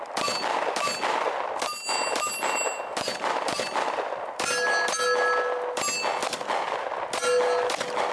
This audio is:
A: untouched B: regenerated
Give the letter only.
A